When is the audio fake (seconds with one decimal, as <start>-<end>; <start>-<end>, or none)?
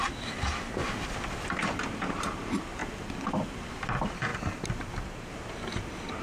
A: 0.0-0.8; 1.5-2.8; 3.3-4.3; 5.3-6.2